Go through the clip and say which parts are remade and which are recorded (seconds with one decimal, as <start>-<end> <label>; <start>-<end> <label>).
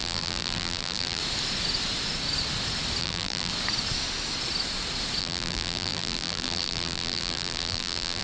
0.0-1.2 remade; 1.2-3.0 recorded; 3.0-3.5 remade; 3.5-5.2 recorded; 5.2-8.2 remade